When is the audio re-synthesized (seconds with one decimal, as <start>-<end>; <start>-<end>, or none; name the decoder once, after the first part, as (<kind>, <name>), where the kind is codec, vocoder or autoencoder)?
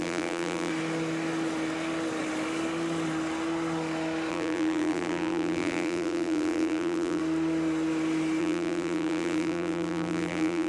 0.0-0.7 (vocoder, BigVGAN v2); 4.3-7.2; 8.4-10.7